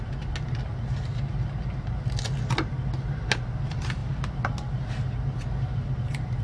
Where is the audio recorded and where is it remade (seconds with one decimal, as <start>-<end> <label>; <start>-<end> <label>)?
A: 0.0-6.4 recorded